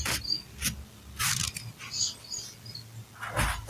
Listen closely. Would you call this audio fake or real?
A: real